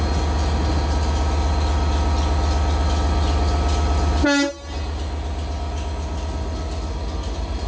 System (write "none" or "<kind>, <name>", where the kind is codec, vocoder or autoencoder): none